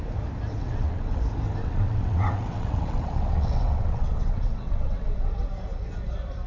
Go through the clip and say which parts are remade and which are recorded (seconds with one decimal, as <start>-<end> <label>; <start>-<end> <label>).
0.0-0.6 recorded; 0.6-1.2 remade; 1.2-1.6 recorded; 1.6-5.5 remade; 5.5-6.5 recorded